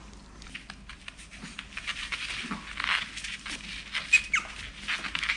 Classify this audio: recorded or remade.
recorded